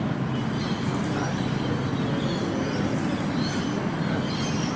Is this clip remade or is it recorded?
recorded